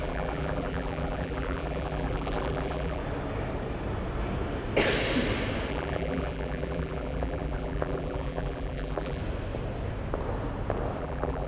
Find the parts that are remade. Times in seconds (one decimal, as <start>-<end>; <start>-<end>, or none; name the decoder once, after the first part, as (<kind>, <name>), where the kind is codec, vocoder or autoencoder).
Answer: 0.0-3.0 (vocoder, BigVGAN v2); 5.7-9.2; 11.0-11.5